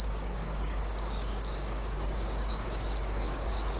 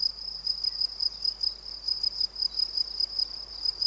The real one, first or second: second